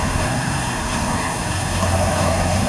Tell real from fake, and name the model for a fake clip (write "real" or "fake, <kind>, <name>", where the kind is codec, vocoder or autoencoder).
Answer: fake, codec, SNAC